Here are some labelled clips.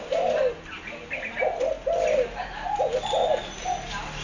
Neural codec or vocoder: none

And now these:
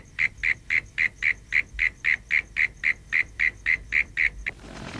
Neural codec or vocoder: none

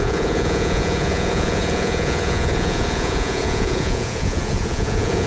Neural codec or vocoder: vocoder, Vocos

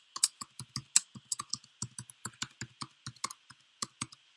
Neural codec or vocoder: none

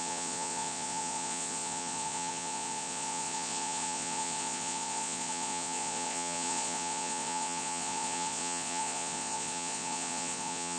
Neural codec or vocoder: vocoder, Vocos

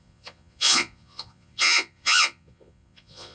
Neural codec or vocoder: vocoder, Vocos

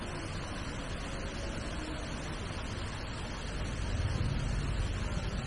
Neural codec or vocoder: none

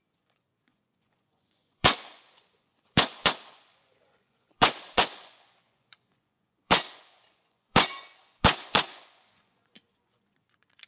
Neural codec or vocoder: vocoder, Vocos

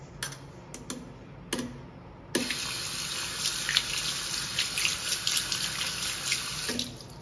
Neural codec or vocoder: none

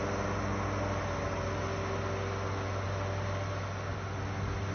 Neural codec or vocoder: none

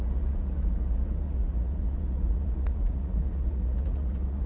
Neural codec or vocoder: vocoder, Vocos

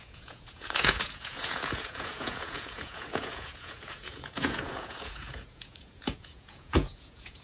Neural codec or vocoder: vocoder, Vocos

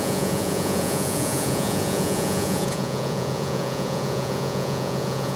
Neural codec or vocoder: vocoder, Vocos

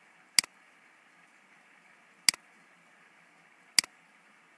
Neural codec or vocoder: none